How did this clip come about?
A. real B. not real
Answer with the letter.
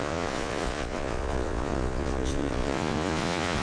B